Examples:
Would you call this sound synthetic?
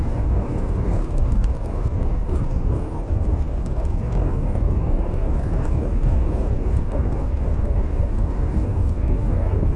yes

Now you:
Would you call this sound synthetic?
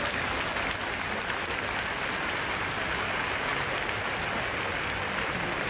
no